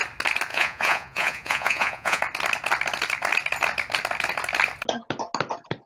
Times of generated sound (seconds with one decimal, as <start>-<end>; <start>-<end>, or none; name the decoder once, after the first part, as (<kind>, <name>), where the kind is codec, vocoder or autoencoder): 0.5-2.2 (vocoder, Vocos)